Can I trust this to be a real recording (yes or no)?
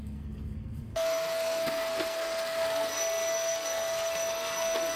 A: no